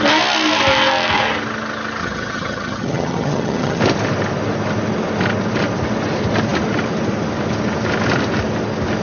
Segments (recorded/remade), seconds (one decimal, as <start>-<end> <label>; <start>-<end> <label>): 0.0-2.0 recorded; 2.0-3.8 remade; 3.8-9.0 recorded